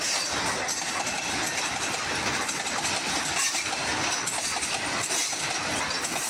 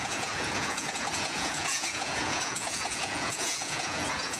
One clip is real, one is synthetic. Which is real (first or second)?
first